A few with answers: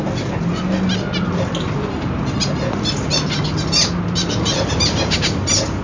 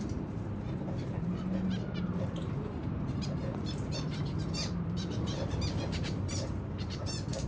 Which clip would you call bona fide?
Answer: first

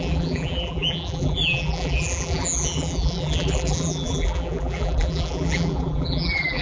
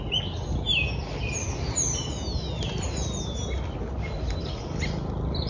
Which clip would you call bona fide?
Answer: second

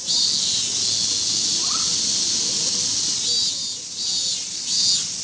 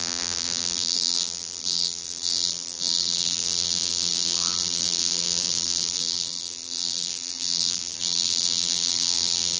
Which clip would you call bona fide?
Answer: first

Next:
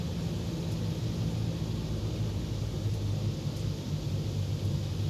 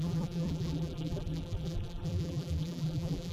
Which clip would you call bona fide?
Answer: first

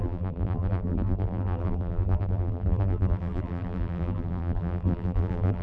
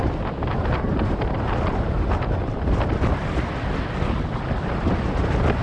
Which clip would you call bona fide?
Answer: second